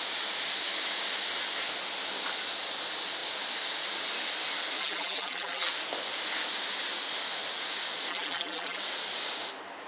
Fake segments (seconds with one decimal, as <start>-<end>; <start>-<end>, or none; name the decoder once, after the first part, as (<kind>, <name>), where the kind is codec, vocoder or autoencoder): 4.8-5.7 (vocoder, BigVGAN v2); 8.1-8.8